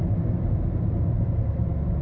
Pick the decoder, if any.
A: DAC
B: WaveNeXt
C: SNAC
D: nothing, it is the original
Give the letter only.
D